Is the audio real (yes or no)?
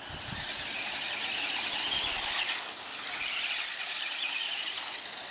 yes